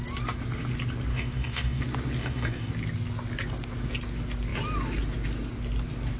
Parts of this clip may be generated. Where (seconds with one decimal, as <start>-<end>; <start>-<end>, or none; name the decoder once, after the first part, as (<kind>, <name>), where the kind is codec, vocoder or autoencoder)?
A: 1.1-1.8 (codec, DAC); 2.2-2.7